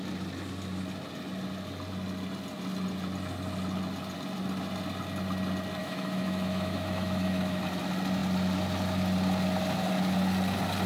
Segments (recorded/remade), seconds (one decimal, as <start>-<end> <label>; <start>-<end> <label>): 0.0-5.8 recorded; 5.8-7.6 remade; 7.6-10.9 recorded